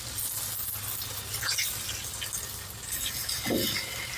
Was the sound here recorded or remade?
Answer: recorded